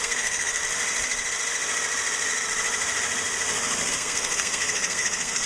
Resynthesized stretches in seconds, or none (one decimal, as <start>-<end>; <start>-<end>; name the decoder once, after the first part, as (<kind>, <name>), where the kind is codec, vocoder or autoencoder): 0.0-0.6 (codec, SNAC); 3.9-5.5